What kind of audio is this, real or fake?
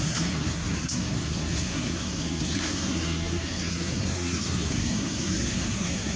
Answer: fake